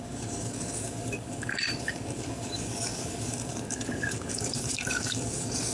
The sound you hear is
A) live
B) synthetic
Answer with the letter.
B